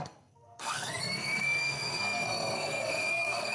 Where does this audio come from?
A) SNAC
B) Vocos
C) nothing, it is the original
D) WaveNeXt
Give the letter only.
A